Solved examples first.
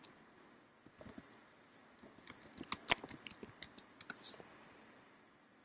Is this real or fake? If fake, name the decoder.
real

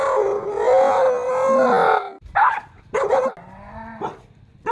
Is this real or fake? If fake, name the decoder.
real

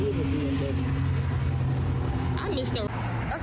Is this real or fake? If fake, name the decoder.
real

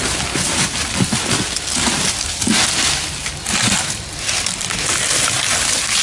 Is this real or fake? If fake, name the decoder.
real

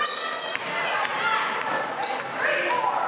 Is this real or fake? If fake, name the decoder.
real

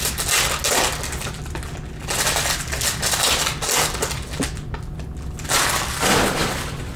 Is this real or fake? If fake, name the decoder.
real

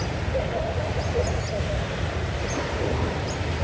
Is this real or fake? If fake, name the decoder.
real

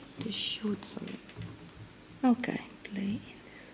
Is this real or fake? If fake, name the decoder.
real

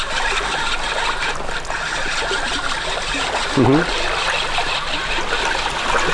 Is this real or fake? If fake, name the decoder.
real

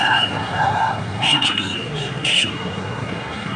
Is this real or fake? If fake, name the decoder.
fake, codec, SNAC